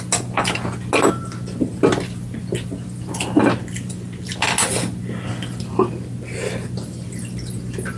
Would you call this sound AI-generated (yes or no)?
no